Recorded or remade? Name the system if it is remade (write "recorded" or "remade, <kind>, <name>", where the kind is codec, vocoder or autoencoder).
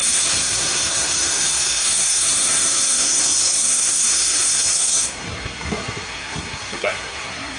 remade, codec, SNAC